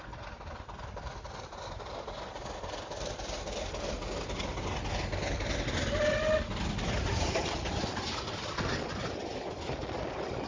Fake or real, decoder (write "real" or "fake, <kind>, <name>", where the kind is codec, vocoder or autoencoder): real